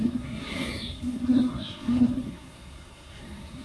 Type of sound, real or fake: fake